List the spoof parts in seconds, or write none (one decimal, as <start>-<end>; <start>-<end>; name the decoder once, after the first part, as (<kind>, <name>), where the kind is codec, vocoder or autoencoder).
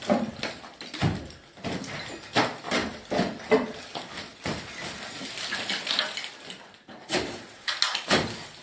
none